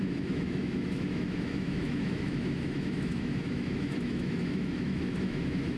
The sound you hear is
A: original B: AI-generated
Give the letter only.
B